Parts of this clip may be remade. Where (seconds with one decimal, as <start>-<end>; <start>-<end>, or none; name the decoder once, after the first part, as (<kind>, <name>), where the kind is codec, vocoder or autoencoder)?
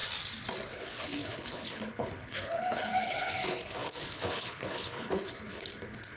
0.7-6.2 (codec, HILCodec)